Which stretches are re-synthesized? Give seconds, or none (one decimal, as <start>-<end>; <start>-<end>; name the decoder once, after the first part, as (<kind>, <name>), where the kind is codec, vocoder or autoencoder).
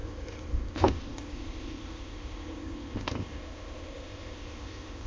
0.0-5.1 (codec, ZipCodec)